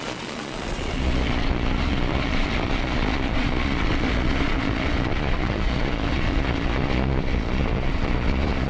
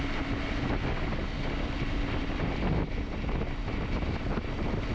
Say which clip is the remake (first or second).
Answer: first